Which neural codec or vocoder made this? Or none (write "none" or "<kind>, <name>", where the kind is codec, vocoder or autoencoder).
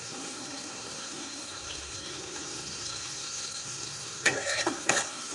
codec, SNAC